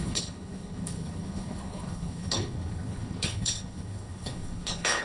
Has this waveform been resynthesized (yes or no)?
yes